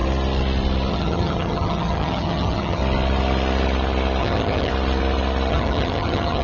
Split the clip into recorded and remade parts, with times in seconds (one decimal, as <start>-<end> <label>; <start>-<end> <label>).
0.0-0.9 recorded; 0.9-2.8 remade; 2.8-4.2 recorded; 4.2-4.7 remade; 4.7-5.5 recorded; 5.5-6.4 remade